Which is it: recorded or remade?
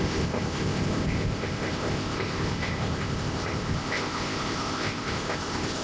remade